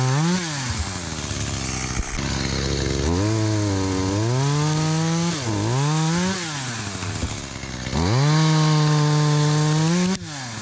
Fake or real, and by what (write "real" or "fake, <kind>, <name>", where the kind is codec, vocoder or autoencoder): real